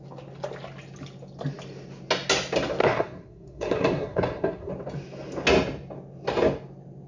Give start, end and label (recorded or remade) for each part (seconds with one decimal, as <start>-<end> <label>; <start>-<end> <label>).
0.0-2.8 recorded; 2.8-4.7 remade; 4.7-7.1 recorded